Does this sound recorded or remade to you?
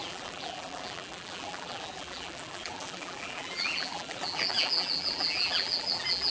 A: remade